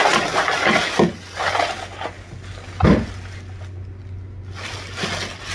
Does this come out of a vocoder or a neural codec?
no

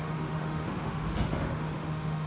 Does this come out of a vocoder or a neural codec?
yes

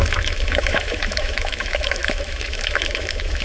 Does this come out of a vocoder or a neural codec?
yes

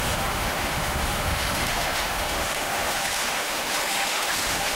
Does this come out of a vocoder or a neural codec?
yes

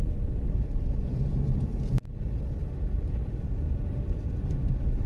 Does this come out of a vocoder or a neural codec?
no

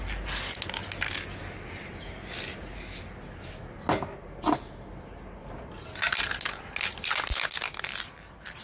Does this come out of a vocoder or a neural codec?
no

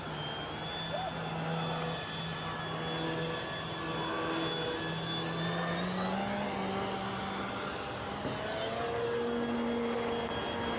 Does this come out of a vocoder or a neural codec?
no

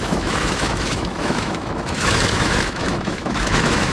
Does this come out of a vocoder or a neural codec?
yes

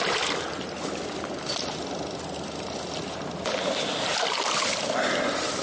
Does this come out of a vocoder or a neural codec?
no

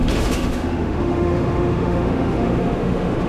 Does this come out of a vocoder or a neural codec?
yes